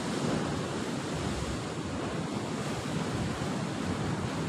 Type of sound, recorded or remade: recorded